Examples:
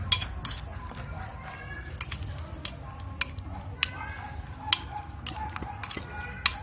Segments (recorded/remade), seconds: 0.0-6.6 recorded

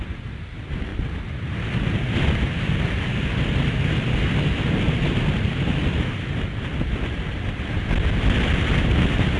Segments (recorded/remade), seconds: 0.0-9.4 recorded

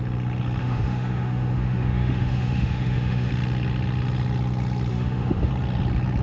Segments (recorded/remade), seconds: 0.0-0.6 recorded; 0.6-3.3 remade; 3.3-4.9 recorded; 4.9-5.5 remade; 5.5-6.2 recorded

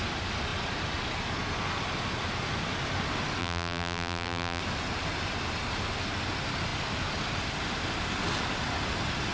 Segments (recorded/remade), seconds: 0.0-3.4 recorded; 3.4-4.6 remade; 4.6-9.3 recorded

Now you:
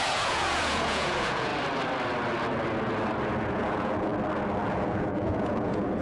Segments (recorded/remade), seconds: 0.0-1.5 remade; 1.5-3.4 recorded; 3.4-4.1 remade; 4.1-4.7 recorded; 4.7-6.0 remade

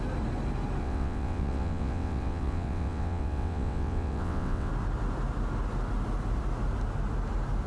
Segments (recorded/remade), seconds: 0.0-0.8 recorded; 0.8-4.7 remade; 4.7-7.7 recorded